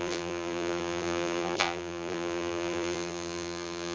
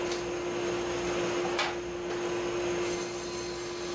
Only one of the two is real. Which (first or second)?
second